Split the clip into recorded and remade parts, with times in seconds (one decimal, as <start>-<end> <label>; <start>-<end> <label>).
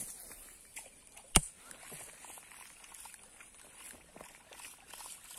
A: 0.0-0.7 recorded; 0.7-1.5 remade; 1.5-5.4 recorded